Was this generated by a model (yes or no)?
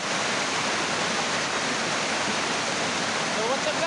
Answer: no